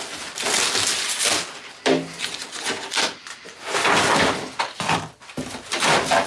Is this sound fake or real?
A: real